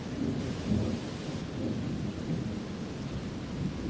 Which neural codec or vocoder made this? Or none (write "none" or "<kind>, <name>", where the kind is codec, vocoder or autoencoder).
none